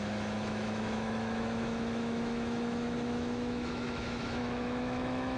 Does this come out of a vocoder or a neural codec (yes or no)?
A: yes